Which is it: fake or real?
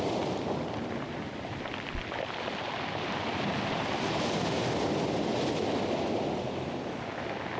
real